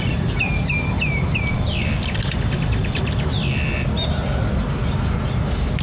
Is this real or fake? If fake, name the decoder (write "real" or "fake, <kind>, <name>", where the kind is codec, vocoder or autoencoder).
real